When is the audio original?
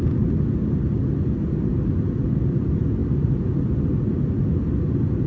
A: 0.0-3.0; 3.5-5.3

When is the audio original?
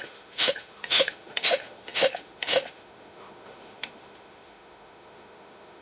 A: none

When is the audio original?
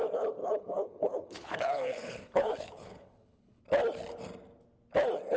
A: 0.0-0.4; 3.6-5.4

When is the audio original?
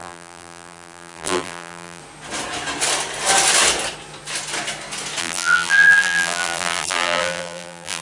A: 2.0-5.2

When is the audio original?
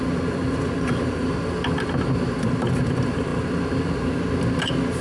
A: 0.0-5.0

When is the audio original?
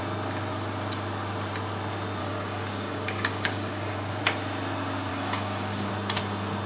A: 0.0-2.2; 4.2-5.1; 5.9-6.7